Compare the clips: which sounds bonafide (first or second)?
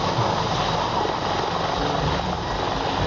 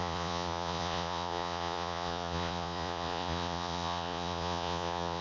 first